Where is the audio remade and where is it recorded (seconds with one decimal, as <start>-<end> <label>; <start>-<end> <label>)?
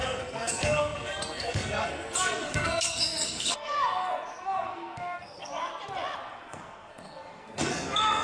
0.0-5.7 remade; 5.7-6.3 recorded; 6.3-8.2 remade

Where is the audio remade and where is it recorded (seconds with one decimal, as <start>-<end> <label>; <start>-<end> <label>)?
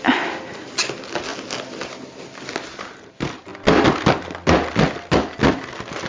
0.0-6.1 recorded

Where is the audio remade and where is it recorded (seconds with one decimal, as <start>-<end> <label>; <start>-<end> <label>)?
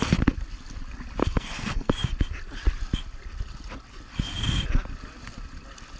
0.0-1.2 recorded; 1.2-1.9 remade; 1.9-6.0 recorded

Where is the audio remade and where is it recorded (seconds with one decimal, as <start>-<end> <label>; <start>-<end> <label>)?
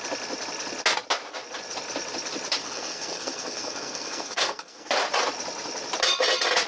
0.0-2.6 recorded; 2.6-4.9 remade; 4.9-6.7 recorded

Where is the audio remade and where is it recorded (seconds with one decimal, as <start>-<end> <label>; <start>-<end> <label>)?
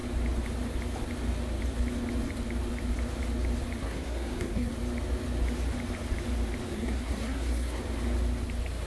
0.0-3.8 recorded; 3.8-4.7 remade; 4.7-6.7 recorded; 6.7-7.8 remade; 7.8-8.9 recorded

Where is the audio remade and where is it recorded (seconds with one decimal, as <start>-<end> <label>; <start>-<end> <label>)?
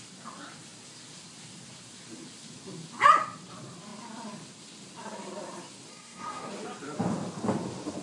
0.0-5.9 recorded; 5.9-6.5 remade; 6.5-8.0 recorded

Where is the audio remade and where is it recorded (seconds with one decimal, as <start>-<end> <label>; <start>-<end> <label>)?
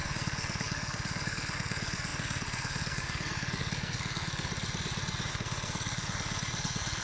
0.0-4.5 remade; 4.5-5.3 recorded; 5.3-7.0 remade